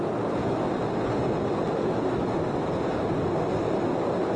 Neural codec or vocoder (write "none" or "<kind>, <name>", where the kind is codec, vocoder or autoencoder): none